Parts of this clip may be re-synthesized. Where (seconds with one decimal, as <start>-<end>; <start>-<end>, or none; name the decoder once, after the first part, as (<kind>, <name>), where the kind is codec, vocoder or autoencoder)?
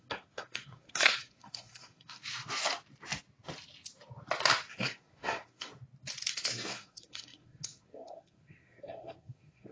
0.0-2.2 (codec, SNAC); 4.7-5.7; 6.3-9.7